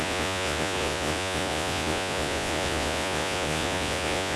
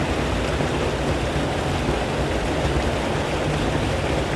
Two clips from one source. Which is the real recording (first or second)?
second